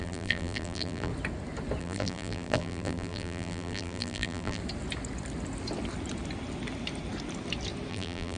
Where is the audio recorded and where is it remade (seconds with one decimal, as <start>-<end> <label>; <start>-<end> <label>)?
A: 0.0-1.1 remade; 1.1-1.8 recorded; 1.8-4.6 remade; 4.6-7.9 recorded; 7.9-8.4 remade